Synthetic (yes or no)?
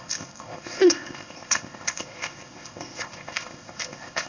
yes